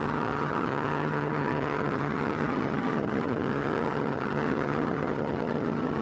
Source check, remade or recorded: remade